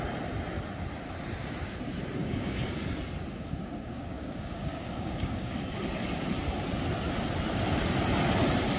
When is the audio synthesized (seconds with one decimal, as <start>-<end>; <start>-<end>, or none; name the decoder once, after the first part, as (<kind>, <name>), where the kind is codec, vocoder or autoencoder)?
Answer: 2.2-2.8 (codec, DAC); 3.3-5.6